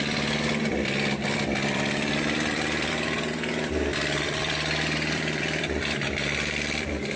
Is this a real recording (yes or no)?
no